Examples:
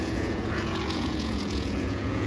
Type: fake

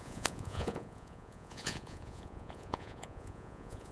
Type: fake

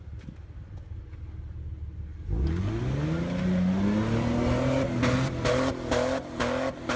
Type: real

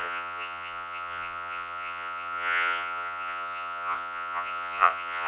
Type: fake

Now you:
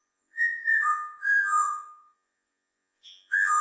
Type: fake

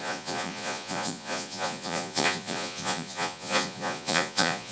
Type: fake